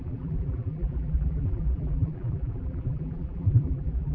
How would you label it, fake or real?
fake